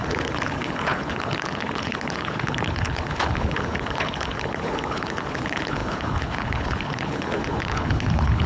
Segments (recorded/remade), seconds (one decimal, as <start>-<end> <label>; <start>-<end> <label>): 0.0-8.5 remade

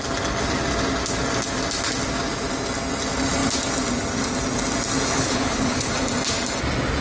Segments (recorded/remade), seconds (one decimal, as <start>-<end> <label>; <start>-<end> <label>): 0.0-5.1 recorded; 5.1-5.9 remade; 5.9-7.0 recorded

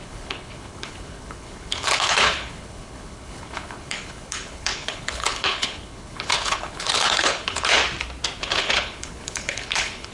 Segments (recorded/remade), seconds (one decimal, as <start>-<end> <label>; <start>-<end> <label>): 0.0-7.8 remade; 7.8-8.4 recorded; 8.4-10.1 remade